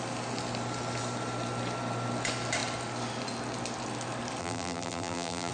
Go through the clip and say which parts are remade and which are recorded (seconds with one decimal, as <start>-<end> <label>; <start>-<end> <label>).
0.0-4.4 recorded; 4.4-5.5 remade